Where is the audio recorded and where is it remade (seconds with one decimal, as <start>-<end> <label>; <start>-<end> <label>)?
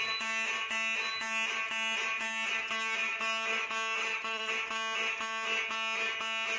0.0-4.0 recorded; 4.0-4.5 remade; 4.5-6.6 recorded